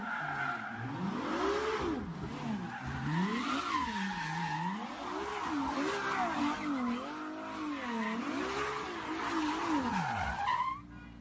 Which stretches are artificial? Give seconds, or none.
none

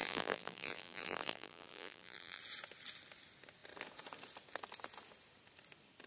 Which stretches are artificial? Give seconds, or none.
0.0-2.4

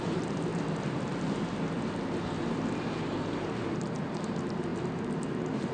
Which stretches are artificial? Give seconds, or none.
0.0-0.5; 3.9-5.7

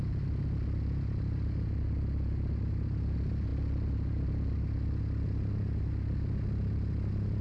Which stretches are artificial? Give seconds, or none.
none

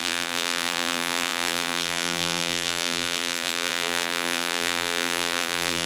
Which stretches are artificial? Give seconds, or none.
0.0-5.9